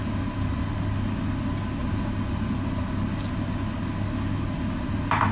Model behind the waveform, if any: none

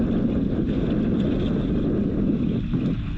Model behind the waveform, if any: none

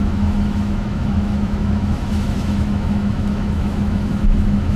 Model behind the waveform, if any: autoencoder, DAC-VAE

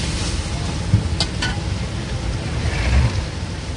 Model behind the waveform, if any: none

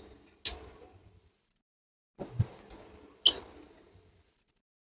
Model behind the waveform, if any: none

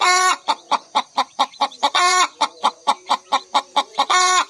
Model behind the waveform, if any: vocoder, Vocos